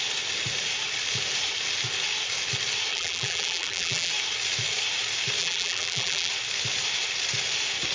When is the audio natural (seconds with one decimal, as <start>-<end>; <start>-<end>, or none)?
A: 0.0-2.9; 4.1-5.4; 6.3-7.9